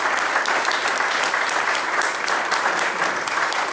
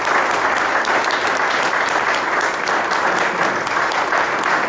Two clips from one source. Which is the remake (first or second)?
first